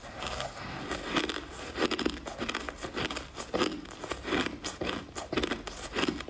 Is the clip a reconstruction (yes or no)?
no